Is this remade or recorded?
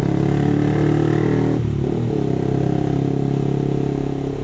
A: recorded